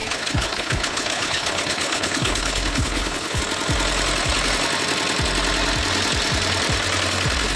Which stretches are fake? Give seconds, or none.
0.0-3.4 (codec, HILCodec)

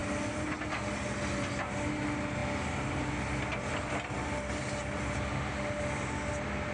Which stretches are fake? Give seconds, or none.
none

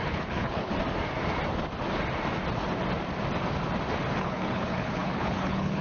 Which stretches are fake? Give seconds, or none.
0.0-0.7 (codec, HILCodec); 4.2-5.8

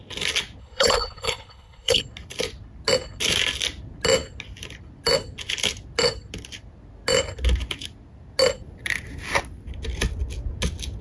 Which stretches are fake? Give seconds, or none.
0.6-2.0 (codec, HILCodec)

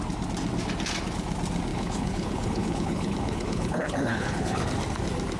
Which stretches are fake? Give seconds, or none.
1.7-4.6 (codec, HILCodec)

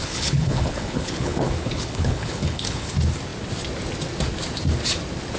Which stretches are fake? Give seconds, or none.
0.0-2.9 (codec, HILCodec)

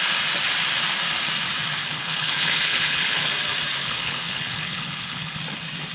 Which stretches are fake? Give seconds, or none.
1.8-3.3 (codec, HILCodec); 3.8-5.4

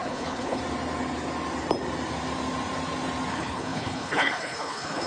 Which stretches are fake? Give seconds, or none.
0.0-0.6 (codec, HILCodec); 3.3-5.1